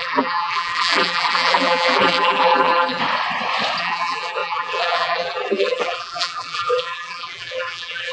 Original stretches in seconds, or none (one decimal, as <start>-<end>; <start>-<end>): 3.0-3.8